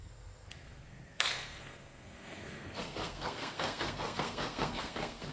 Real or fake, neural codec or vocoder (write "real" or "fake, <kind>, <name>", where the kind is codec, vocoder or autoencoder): fake, codec, SNAC